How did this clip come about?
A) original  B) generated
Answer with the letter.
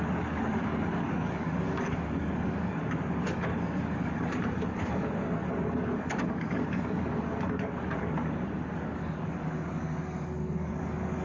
B